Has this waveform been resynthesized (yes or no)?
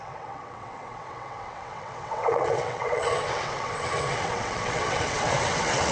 yes